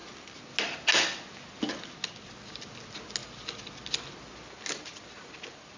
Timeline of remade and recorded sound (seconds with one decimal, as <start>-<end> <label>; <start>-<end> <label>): 0.0-5.8 recorded